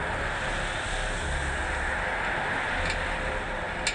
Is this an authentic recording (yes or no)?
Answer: yes